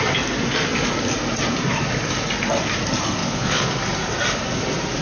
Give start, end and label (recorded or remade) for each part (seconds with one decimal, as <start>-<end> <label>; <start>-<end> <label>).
0.0-3.2 recorded; 3.2-3.7 remade; 3.7-5.0 recorded